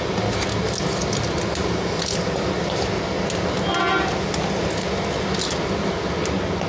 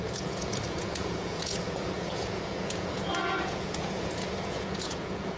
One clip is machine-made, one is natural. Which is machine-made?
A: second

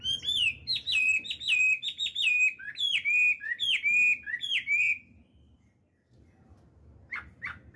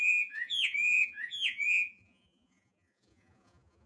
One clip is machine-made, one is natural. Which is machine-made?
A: second